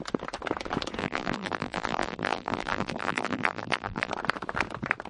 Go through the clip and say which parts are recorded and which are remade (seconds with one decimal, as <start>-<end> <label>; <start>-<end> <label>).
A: 0.0-1.0 recorded; 1.0-4.1 remade; 4.1-5.1 recorded